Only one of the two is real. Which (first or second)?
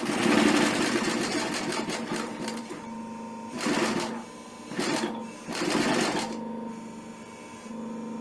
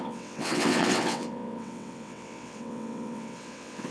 first